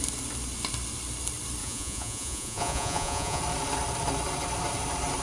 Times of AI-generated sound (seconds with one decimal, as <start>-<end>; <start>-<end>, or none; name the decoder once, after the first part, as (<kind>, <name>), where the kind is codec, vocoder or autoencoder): 1.6-3.4 (vocoder, Vocos)